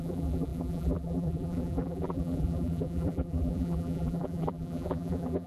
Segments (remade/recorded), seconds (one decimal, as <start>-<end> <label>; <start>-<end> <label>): 0.0-5.5 remade